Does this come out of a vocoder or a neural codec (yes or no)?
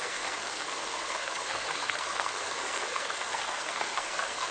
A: yes